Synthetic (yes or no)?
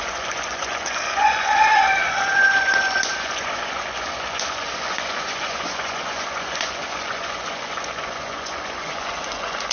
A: yes